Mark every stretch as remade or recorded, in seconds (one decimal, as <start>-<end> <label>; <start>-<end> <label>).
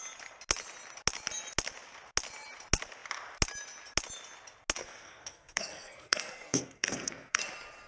0.0-4.8 recorded; 4.8-7.4 remade; 7.4-7.9 recorded